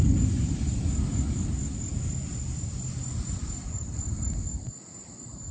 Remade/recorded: recorded